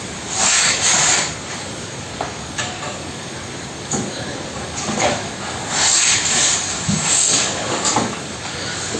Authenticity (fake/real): fake